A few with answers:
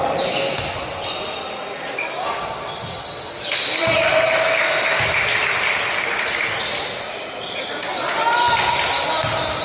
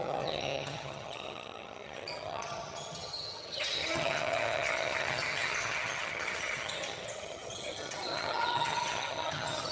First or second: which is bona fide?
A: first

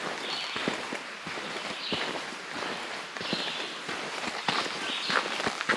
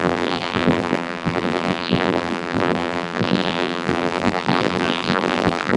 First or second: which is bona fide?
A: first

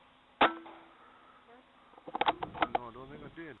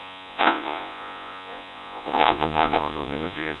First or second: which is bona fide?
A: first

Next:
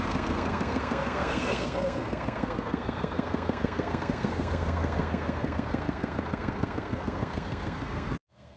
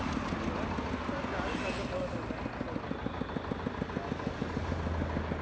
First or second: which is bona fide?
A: second